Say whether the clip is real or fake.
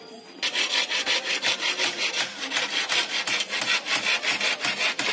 real